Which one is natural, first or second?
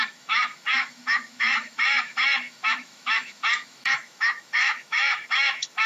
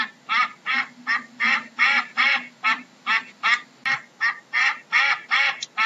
second